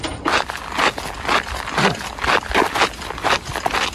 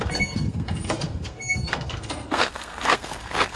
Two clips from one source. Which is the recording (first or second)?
first